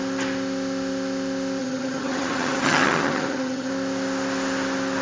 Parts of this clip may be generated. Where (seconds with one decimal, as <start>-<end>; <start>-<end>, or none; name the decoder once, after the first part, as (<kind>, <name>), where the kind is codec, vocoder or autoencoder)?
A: 1.6-3.7 (vocoder, HiFi-GAN)